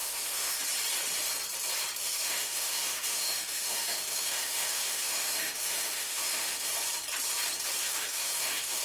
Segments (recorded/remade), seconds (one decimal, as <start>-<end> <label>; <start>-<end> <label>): 0.0-0.6 remade; 0.6-2.0 recorded; 2.0-6.7 remade; 6.7-7.8 recorded; 7.8-8.8 remade